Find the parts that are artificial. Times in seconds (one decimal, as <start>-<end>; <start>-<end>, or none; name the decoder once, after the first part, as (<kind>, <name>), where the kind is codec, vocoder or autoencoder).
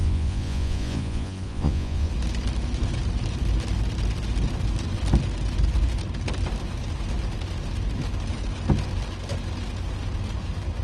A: 0.0-2.1 (vocoder, Vocos)